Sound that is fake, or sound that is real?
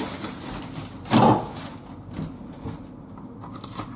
real